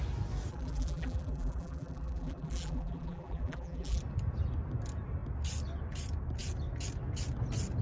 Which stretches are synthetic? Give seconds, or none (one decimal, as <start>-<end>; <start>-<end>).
0.5-4.0